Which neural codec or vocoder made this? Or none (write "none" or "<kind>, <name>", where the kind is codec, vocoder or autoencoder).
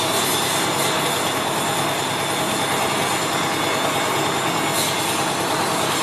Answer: none